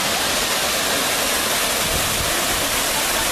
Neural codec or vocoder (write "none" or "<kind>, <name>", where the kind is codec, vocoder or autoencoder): none